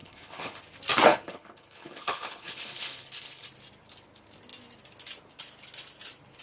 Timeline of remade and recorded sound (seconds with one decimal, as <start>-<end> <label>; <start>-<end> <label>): 0.0-0.6 remade; 0.6-1.1 recorded; 1.1-3.5 remade; 3.5-6.4 recorded